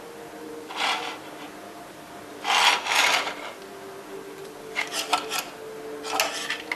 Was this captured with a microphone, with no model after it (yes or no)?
yes